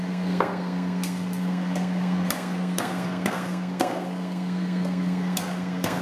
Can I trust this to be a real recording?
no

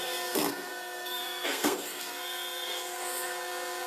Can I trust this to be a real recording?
no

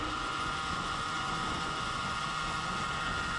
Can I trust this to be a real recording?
no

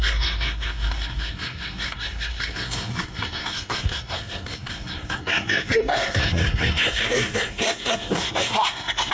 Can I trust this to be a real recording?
no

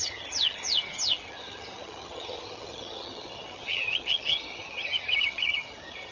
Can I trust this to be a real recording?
no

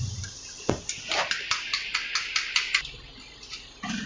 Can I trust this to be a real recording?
yes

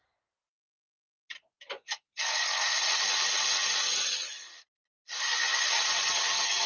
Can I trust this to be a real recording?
yes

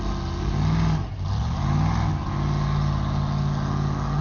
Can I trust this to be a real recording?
yes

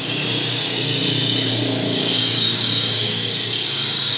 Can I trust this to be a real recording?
no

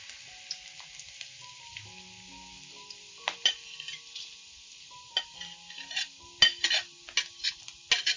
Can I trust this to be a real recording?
yes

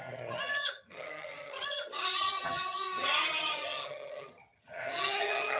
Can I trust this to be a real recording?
no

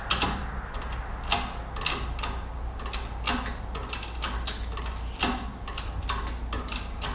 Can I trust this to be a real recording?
yes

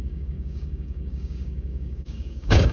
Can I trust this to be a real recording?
no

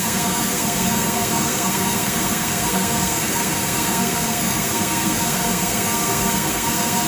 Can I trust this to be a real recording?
no